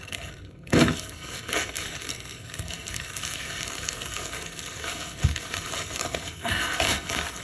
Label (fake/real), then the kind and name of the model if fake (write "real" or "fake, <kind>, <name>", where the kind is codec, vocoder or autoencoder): fake, codec, SNAC